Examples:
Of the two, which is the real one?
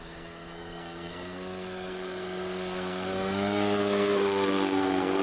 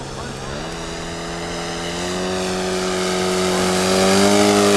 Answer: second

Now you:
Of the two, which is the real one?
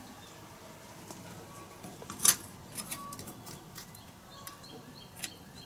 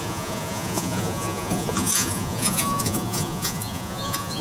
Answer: first